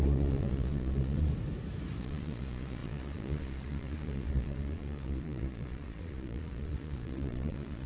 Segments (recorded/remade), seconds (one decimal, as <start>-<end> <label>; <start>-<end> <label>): 0.0-1.3 remade; 1.3-2.0 recorded; 2.0-7.9 remade